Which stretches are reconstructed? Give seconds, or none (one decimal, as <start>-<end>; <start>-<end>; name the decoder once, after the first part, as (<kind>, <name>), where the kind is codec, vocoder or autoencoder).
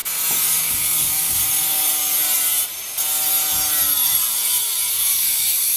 0.6-1.4 (codec, DAC); 4.9-5.8